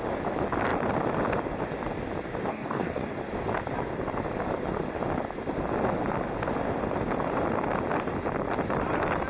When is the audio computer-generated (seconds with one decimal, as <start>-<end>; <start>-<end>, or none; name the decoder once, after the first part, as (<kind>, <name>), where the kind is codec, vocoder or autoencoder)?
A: 2.5-3.1 (codec, DAC)